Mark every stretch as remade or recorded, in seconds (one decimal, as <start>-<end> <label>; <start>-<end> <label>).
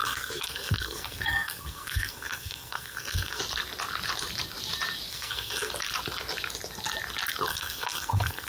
0.0-3.4 remade; 3.4-5.1 recorded; 5.1-5.7 remade; 5.7-7.5 recorded; 7.5-8.5 remade